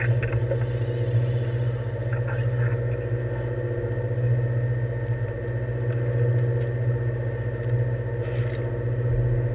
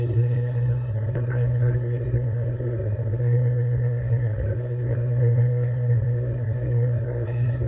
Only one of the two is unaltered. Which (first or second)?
first